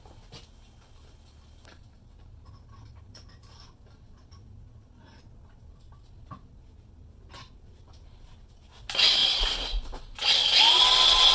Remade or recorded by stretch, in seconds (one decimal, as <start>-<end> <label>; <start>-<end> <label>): 0.0-11.3 recorded